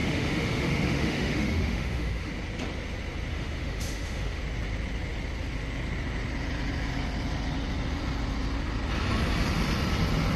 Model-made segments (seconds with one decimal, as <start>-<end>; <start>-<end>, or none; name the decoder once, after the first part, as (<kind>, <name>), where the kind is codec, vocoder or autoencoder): 0.0-2.3 (autoencoder, DAC-VAE); 3.3-4.4